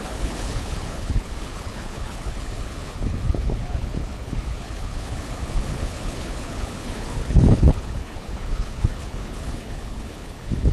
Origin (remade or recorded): remade